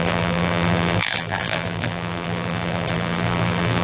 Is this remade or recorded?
remade